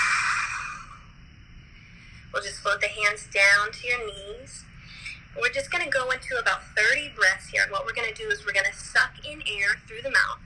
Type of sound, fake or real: real